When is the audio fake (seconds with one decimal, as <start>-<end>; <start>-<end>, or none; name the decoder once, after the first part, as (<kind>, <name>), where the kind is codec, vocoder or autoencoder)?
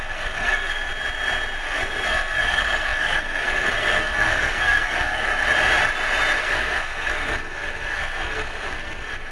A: 0.0-0.9 (codec, SNAC); 1.6-5.3; 6.4-9.3